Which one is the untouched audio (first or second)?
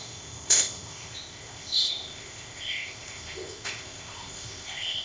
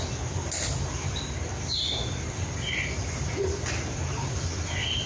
second